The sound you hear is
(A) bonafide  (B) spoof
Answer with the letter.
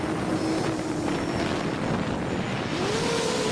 A